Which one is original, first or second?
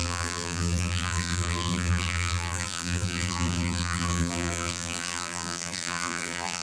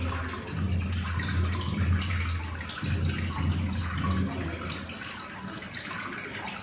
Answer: second